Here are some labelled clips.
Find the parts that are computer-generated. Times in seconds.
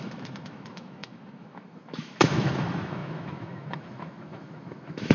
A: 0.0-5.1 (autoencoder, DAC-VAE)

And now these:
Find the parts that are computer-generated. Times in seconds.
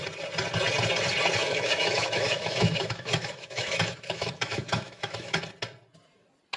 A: 1.4-5.4 (autoencoder, DAC-VAE)